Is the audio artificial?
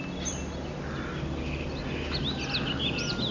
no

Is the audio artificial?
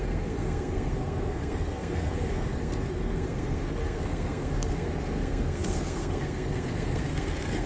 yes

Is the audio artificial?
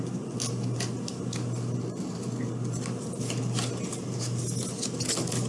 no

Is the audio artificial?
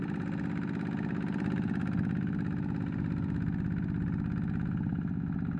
no